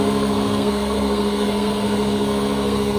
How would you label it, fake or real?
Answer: fake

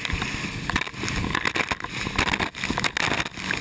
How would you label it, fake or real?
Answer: real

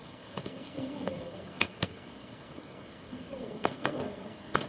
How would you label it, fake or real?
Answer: fake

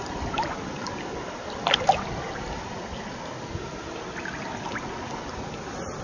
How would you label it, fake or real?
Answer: real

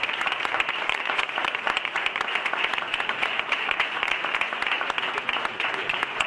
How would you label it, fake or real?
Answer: fake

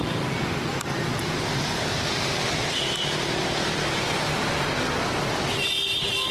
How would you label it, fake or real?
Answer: real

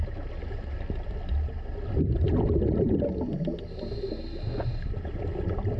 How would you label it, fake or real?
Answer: real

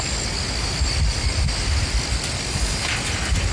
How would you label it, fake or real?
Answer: real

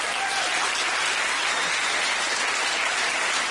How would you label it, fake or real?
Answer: real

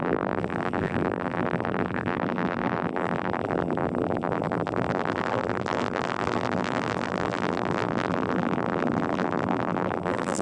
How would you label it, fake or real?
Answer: fake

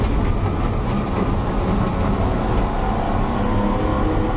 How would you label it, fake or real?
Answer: real